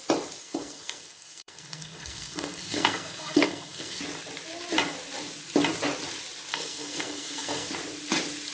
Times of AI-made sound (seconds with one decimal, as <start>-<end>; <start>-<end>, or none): 0.4-4.0; 6.5-7.7